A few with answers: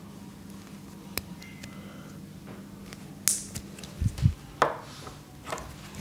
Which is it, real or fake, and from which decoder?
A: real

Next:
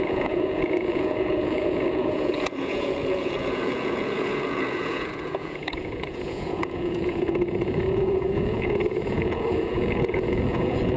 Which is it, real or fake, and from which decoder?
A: fake, vocoder, Vocos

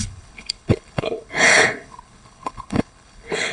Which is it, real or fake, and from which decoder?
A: fake, codec, HILCodec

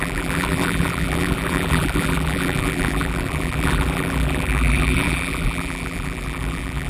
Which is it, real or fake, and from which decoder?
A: fake, vocoder, BigVGAN v2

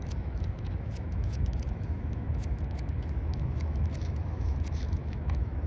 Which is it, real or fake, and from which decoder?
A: fake, autoencoder, DAC-VAE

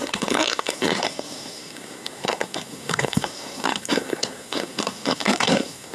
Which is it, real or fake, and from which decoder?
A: fake, codec, SNAC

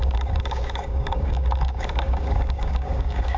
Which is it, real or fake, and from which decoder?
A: fake, codec, DAC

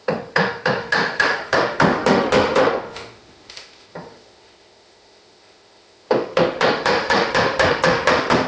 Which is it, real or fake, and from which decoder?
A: fake, autoencoder, DAC-VAE